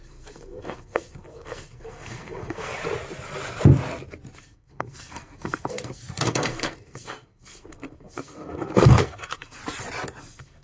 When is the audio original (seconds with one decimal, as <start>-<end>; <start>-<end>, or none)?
2.8-4.4; 9.6-10.2